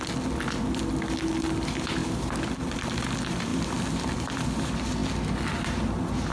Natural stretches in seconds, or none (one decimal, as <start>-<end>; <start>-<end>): 0.0-6.3